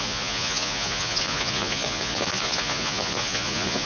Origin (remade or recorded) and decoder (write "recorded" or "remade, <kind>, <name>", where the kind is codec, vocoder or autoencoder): remade, vocoder, Vocos